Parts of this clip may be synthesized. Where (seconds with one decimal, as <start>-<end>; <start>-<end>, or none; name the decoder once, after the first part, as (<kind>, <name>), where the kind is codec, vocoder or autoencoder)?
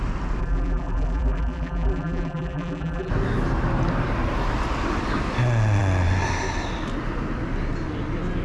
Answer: 0.4-3.1 (vocoder, BigVGAN v2)